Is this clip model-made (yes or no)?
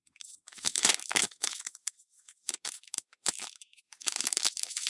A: yes